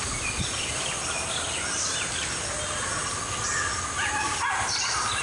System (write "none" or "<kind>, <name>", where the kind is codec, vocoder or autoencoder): none